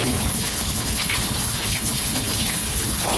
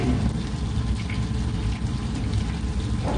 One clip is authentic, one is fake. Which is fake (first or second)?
first